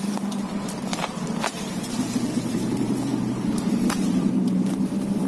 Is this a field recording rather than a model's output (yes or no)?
no